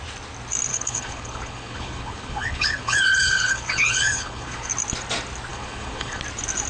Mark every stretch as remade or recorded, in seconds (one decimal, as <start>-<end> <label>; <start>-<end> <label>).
0.0-0.7 recorded; 0.7-4.7 remade; 4.7-5.5 recorded; 5.5-6.2 remade; 6.2-6.7 recorded